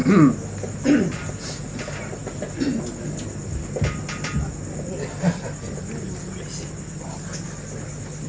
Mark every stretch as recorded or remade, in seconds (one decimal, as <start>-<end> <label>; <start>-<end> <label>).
0.0-8.3 recorded